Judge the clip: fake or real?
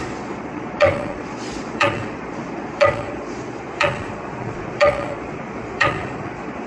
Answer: fake